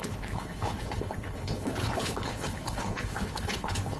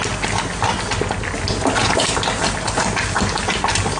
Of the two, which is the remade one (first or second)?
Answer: first